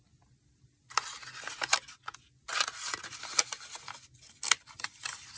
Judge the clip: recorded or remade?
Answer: recorded